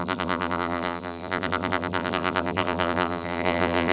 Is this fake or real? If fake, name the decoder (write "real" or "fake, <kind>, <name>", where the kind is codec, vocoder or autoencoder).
fake, vocoder, BigVGAN v2